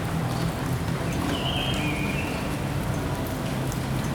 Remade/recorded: recorded